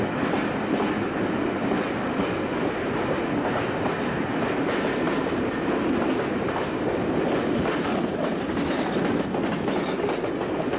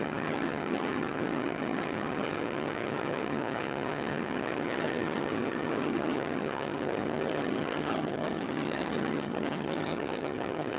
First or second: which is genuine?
first